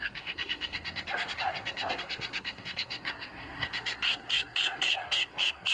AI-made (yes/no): yes